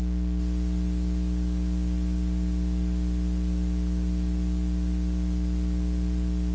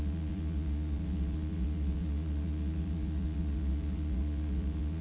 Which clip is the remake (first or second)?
second